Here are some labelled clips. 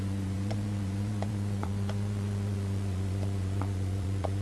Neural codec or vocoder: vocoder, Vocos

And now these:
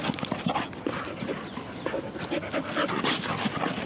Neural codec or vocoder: none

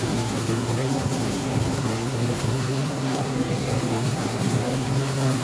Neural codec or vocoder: codec, SNAC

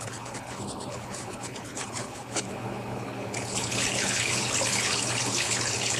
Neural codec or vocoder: codec, HILCodec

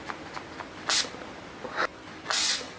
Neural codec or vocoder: none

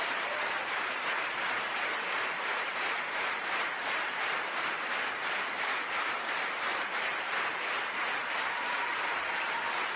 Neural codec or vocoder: vocoder, BigVGAN v2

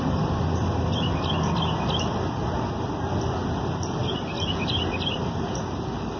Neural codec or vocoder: none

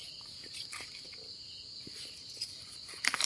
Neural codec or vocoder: none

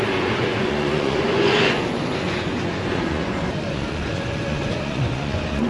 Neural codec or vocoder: vocoder, Vocos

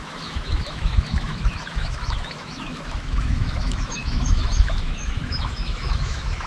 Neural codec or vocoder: autoencoder, DAC-VAE